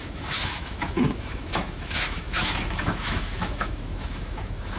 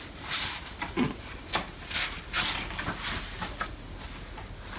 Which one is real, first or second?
second